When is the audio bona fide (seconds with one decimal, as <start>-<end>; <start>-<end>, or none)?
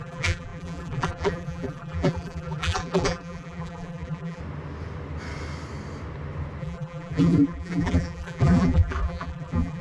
4.4-6.6